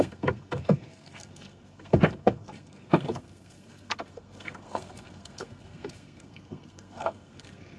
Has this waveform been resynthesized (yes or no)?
yes